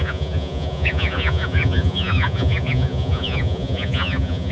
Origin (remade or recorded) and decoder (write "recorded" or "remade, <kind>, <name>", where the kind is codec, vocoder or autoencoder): remade, vocoder, Vocos